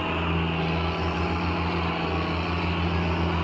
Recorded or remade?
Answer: recorded